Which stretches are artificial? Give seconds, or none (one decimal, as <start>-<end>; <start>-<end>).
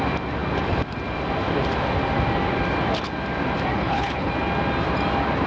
3.7-4.3